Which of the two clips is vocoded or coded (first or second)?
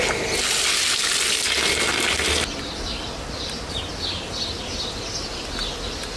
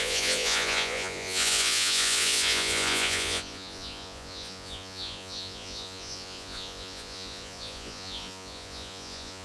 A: second